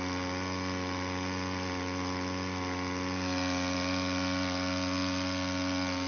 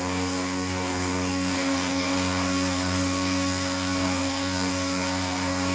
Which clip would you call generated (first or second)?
second